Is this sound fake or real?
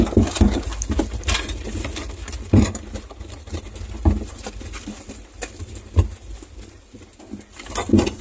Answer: fake